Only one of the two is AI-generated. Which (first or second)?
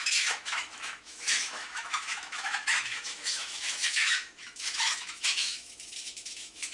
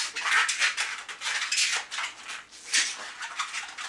first